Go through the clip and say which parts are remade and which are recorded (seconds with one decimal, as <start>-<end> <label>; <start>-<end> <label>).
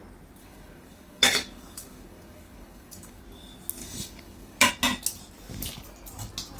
0.0-0.4 recorded; 0.4-3.2 remade; 3.2-3.8 recorded; 3.8-4.7 remade; 4.7-6.6 recorded